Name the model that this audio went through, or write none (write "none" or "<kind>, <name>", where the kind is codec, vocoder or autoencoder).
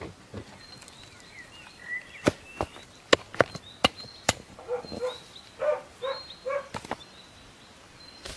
none